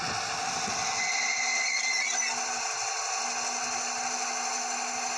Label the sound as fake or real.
real